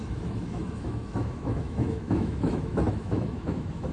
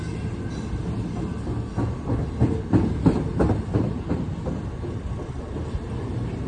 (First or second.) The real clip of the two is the second